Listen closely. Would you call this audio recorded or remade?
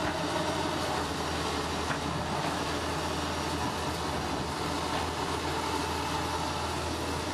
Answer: recorded